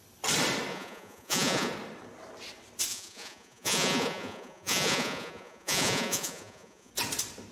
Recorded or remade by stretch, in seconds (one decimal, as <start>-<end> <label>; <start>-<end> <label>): 0.0-0.7 recorded; 0.7-1.7 remade; 1.7-2.9 recorded; 2.9-6.9 remade; 6.9-7.5 recorded